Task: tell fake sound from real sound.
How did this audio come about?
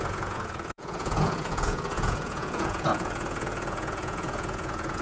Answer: fake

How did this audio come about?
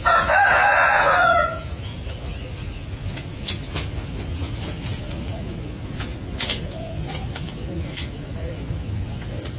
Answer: fake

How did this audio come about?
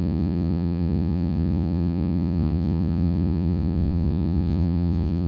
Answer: fake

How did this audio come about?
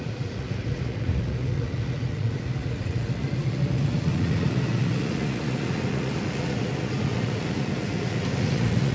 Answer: fake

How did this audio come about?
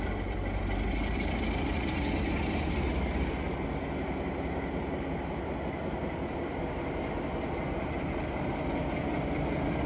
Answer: real